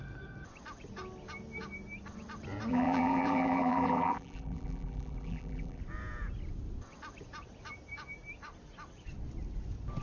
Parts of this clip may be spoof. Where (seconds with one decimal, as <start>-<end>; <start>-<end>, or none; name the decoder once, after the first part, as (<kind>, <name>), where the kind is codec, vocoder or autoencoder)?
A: 2.7-5.8 (vocoder, BigVGAN v2)